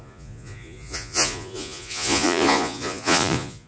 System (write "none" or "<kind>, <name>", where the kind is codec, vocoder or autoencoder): vocoder, Vocos